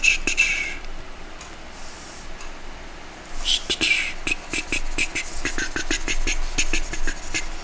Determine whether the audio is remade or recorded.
recorded